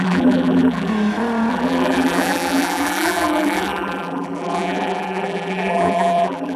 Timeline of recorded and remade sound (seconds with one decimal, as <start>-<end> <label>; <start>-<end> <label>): 0.0-0.9 remade; 0.9-1.5 recorded; 1.5-6.6 remade